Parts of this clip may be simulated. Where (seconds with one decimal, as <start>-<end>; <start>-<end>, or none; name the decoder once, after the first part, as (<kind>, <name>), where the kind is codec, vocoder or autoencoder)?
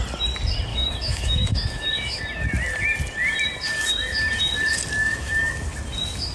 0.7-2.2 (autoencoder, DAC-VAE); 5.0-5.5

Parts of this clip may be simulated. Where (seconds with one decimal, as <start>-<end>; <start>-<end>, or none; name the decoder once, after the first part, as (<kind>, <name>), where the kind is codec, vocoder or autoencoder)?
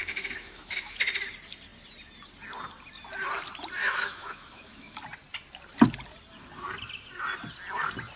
0.0-1.0 (autoencoder, DAC-VAE); 3.8-5.0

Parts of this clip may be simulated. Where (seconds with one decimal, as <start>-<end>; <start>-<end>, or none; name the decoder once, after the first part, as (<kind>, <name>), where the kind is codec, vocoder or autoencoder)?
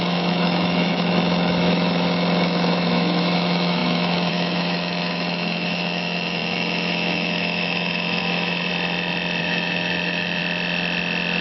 0.0-8.7 (autoencoder, DAC-VAE); 9.4-10.4